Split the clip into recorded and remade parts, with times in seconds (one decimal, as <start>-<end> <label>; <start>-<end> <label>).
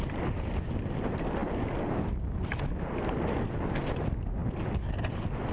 0.0-5.5 recorded